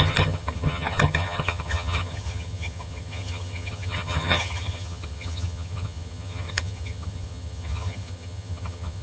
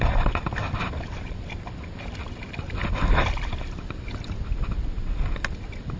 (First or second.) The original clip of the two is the second